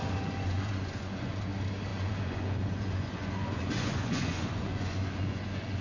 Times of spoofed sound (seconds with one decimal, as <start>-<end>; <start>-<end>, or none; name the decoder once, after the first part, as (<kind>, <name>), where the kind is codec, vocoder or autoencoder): 0.0-1.4 (vocoder, Vocos); 1.9-5.8

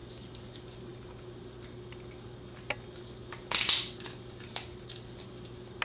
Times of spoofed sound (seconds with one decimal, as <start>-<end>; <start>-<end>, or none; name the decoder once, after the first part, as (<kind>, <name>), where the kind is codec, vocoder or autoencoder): none